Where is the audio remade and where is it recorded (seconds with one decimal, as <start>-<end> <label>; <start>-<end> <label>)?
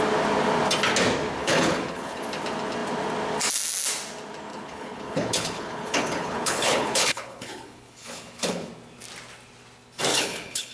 0.0-1.4 recorded; 1.4-2.2 remade; 2.2-4.5 recorded; 4.5-8.7 remade; 8.7-10.1 recorded; 10.1-10.7 remade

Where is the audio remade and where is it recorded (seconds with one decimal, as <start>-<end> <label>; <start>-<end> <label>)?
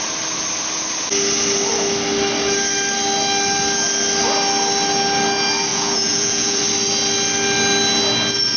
0.0-5.7 recorded; 5.7-6.6 remade; 6.6-8.6 recorded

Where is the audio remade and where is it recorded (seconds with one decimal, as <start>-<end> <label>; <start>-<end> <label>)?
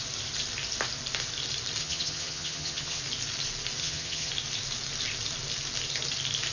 0.0-1.8 recorded; 1.8-3.0 remade; 3.0-3.8 recorded; 3.8-4.3 remade; 4.3-6.5 recorded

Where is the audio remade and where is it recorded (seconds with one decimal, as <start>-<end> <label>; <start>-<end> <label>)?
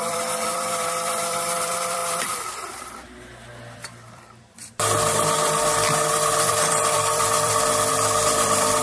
0.0-8.8 remade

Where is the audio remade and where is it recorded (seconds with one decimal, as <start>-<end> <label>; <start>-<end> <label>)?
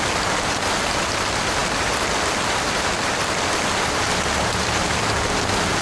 0.0-5.8 recorded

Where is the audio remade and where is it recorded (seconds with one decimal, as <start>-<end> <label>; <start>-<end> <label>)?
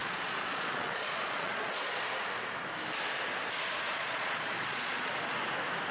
0.0-2.0 remade; 2.0-3.9 recorded; 3.9-5.1 remade; 5.1-5.9 recorded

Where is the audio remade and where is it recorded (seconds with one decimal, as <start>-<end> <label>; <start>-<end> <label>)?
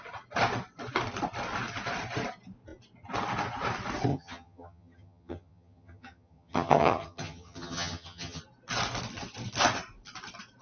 0.0-4.1 recorded; 4.1-8.4 remade; 8.4-10.6 recorded